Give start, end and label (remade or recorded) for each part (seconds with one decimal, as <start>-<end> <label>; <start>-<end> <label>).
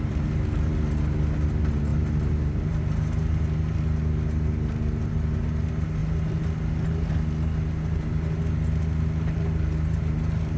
0.0-10.6 recorded